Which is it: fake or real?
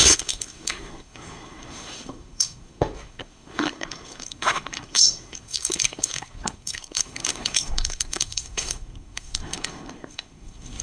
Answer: fake